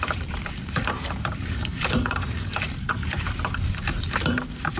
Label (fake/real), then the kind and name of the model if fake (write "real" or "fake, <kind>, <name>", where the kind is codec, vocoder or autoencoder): fake, vocoder, BigVGAN v2